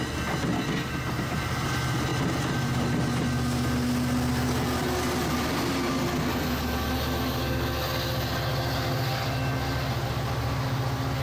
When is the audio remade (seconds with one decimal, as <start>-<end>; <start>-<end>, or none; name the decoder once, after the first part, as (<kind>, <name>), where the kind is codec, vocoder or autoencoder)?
none